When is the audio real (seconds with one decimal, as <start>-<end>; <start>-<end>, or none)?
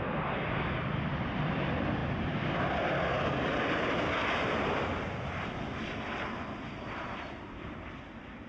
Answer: 2.0-6.7